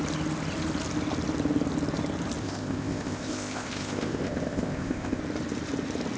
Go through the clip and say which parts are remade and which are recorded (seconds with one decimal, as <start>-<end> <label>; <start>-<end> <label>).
0.0-2.4 recorded; 2.4-5.2 remade; 5.2-6.2 recorded

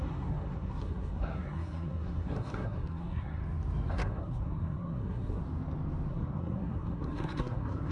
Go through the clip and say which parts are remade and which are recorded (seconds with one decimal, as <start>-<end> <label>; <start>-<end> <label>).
0.0-3.4 remade; 3.4-3.9 recorded; 3.9-5.4 remade; 5.4-6.1 recorded; 6.1-7.9 remade

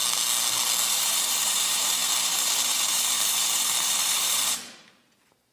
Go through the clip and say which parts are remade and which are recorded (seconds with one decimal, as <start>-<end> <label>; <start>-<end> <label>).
0.0-0.9 recorded; 0.9-5.5 remade

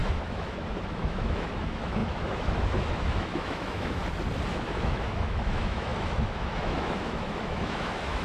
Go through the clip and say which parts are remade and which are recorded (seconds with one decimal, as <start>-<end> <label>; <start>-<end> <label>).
0.0-4.0 remade; 4.0-4.5 recorded; 4.5-8.2 remade

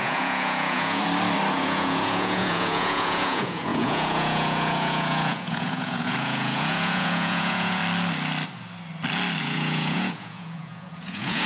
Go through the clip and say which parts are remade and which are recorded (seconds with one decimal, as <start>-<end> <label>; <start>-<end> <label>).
0.0-1.0 remade; 1.0-1.5 recorded; 1.5-7.8 remade; 7.8-9.4 recorded; 9.4-11.5 remade